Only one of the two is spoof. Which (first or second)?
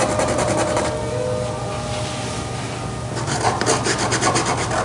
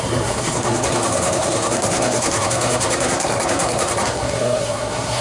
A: second